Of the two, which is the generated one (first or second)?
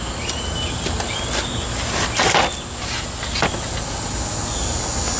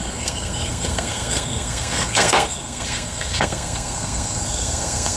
second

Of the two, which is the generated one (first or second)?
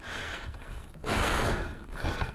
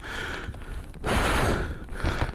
first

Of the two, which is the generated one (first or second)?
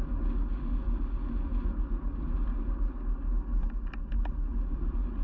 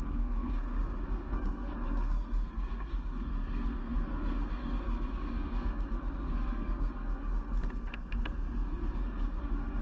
second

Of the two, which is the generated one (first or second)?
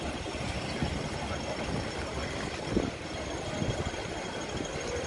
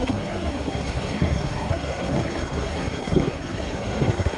second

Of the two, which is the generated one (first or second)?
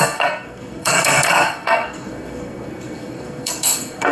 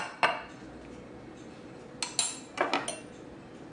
first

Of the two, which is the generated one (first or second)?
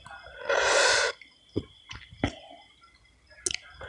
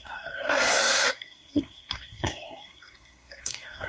second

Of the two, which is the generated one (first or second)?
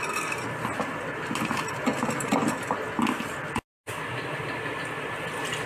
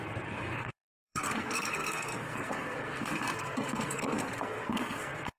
second